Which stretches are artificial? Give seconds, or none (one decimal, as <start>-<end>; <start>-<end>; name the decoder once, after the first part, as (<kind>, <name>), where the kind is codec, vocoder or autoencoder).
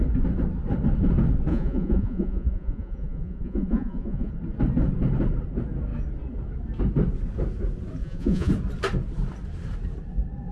1.5-4.3 (vocoder, Vocos); 8.0-8.5